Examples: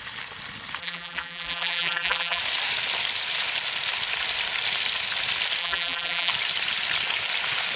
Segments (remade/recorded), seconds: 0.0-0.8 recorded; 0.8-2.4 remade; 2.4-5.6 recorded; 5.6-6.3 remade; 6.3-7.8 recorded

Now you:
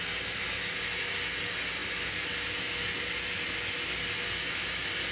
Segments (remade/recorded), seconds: 0.0-5.1 recorded

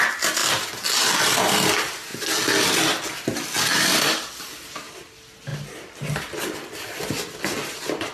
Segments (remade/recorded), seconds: 0.0-8.1 recorded

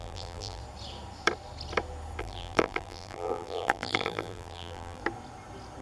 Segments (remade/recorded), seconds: 0.0-0.6 remade; 0.6-2.2 recorded; 2.2-5.0 remade; 5.0-5.8 recorded